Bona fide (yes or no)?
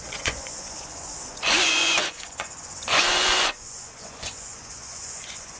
no